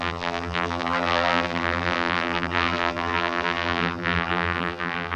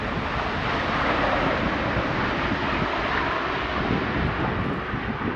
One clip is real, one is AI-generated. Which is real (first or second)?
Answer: second